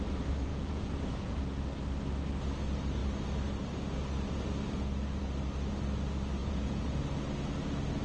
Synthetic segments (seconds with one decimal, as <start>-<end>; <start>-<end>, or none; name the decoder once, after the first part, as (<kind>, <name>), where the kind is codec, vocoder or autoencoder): 0.5-1.4 (vocoder, Vocos); 6.4-7.0

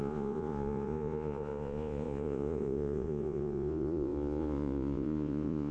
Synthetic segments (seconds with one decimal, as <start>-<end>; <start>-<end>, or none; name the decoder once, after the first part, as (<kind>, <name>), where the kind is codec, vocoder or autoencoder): 0.0-5.7 (vocoder, Vocos)

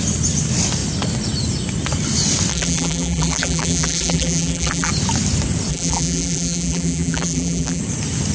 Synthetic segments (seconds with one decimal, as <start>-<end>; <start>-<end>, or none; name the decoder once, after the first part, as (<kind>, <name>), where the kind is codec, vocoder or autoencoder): 2.5-4.9 (vocoder, BigVGAN v2); 5.7-7.8

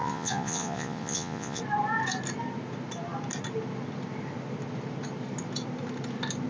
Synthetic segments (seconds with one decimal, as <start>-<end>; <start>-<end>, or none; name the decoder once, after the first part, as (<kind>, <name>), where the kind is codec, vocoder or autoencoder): 0.0-1.6 (vocoder, Vocos)

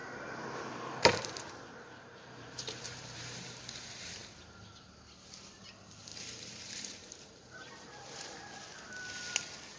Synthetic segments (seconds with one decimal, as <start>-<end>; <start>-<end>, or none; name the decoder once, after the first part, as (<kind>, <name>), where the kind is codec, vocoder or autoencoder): 0.0-3.6 (vocoder, BigVGAN v2); 6.1-8.4

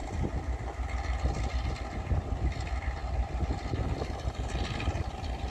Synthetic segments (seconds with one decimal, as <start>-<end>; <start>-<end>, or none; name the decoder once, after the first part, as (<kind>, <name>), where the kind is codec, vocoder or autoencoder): none

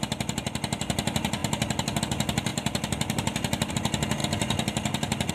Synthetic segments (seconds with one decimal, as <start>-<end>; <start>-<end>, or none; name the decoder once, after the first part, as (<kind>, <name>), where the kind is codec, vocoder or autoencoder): 2.5-3.7 (vocoder, BigVGAN v2); 4.2-5.3

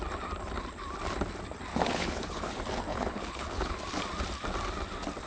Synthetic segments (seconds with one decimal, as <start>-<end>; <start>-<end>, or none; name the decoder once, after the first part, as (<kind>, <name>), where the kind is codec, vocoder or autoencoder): 1.7-2.5 (codec, HILCodec); 2.9-3.7